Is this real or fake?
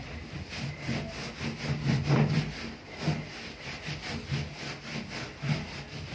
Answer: real